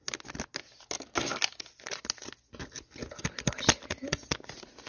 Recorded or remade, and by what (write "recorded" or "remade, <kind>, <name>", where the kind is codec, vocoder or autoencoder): recorded